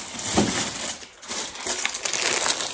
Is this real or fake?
real